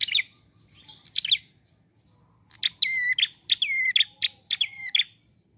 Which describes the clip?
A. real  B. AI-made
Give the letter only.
A